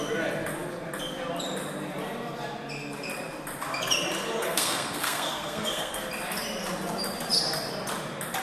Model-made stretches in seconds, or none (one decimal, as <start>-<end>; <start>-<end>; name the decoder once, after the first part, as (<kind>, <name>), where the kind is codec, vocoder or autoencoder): 4.4-6.0 (codec, SNAC)